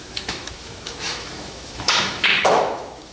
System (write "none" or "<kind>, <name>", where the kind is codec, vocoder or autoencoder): autoencoder, DAC-VAE